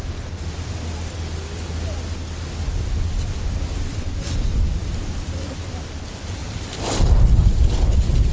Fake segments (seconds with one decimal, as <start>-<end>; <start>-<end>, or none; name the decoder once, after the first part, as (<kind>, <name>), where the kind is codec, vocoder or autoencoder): 4.8-6.0 (vocoder, BigVGAN v2); 6.4-7.9